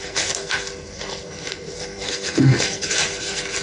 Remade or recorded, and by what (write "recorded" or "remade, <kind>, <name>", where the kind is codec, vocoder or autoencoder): remade, codec, SNAC